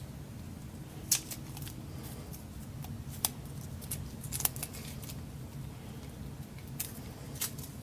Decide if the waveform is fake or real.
real